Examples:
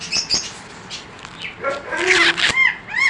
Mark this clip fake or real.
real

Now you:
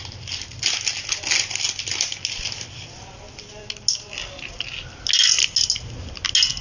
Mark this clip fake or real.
real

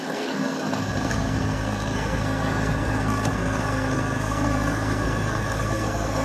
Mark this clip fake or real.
fake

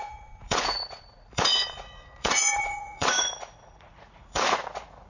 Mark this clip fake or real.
fake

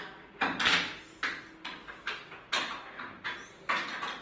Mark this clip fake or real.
real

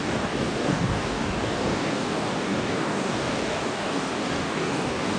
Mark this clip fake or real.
fake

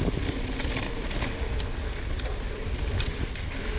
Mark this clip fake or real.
real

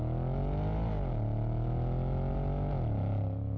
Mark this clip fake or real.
real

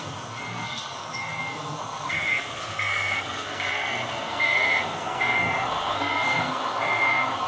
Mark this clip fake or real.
fake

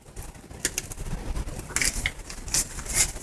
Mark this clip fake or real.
real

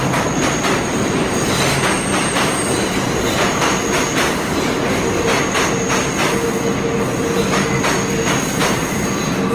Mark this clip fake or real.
real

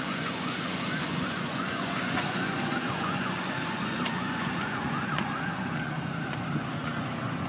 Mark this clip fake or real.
fake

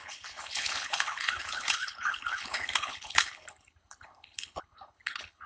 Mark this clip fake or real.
fake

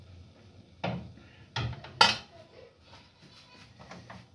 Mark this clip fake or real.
real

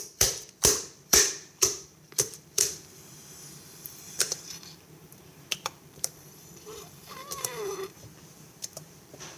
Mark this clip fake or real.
fake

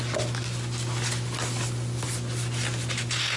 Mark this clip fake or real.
real